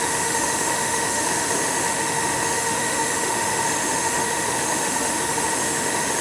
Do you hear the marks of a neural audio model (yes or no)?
yes